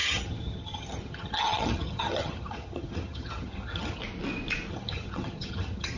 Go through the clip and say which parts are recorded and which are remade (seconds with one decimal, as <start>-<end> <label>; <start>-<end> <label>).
0.0-4.0 remade; 4.0-4.7 recorded; 4.7-6.0 remade